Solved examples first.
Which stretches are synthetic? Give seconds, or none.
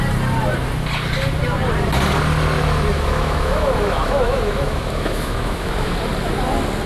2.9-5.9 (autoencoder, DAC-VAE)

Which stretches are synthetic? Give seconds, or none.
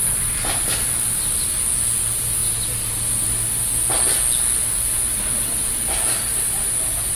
none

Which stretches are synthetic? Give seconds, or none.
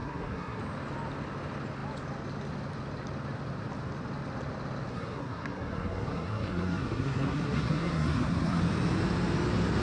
0.0-0.6 (codec, SNAC); 4.9-8.6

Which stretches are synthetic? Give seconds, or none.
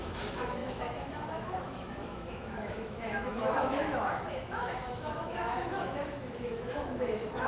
0.0-7.5 (autoencoder, DAC-VAE)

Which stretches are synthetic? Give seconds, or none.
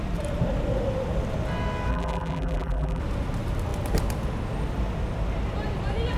1.9-3.0 (vocoder, BigVGAN v2)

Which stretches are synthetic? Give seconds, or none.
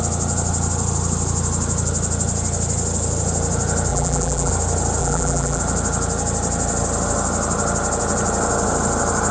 3.9-4.5 (vocoder, BigVGAN v2); 5.0-5.6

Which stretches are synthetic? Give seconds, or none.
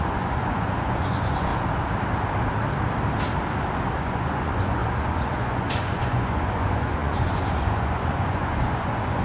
0.0-1.5 (vocoder, Vocos); 4.0-9.2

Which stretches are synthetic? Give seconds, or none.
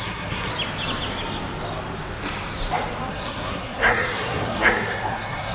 0.0-0.5 (codec, SNAC); 3.1-5.5